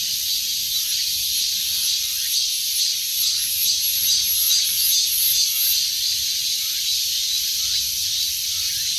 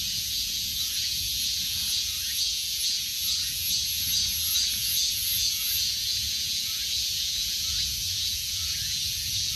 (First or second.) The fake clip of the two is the second